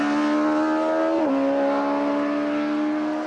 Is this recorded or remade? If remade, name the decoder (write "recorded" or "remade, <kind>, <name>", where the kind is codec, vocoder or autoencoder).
recorded